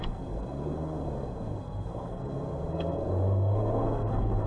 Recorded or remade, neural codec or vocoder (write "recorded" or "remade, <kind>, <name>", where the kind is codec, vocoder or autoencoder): remade, codec, SNAC